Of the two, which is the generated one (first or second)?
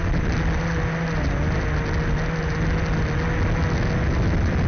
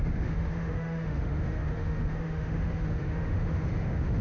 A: second